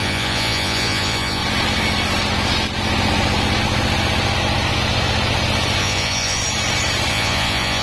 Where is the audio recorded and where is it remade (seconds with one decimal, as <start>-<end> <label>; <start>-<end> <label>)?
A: 0.0-1.4 remade; 1.4-5.8 recorded; 5.8-6.4 remade; 6.4-7.1 recorded; 7.1-7.8 remade